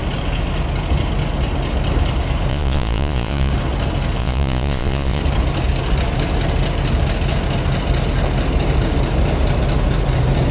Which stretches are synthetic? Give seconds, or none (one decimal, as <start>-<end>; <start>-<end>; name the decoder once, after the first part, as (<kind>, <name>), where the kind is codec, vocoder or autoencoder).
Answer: 2.5-3.5 (vocoder, Vocos); 4.2-5.2